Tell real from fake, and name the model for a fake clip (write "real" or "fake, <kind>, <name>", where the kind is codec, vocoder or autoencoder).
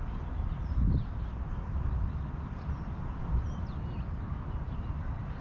real